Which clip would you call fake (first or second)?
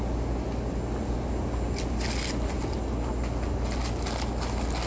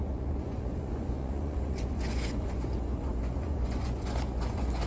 second